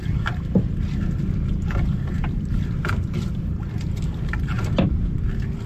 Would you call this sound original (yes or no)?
yes